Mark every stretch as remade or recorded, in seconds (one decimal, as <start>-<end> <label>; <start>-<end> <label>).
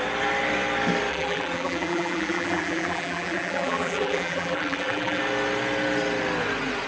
0.0-1.1 recorded; 1.1-5.2 remade; 5.2-6.9 recorded